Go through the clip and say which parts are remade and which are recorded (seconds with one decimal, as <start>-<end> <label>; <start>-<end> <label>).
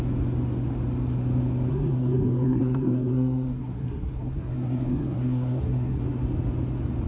0.0-1.7 recorded; 1.7-6.0 remade; 6.0-7.1 recorded